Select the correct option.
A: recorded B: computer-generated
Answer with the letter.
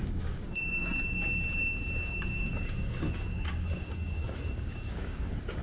B